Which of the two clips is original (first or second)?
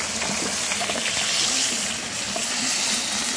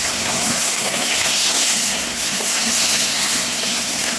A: first